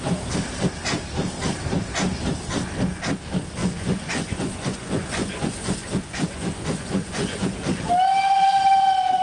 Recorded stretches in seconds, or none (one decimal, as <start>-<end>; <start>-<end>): 0.0-3.6; 7.9-9.2